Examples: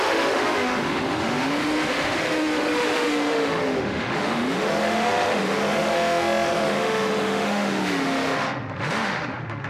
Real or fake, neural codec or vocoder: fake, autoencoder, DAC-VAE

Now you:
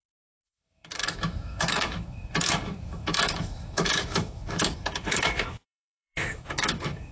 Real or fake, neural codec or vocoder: fake, autoencoder, DAC-VAE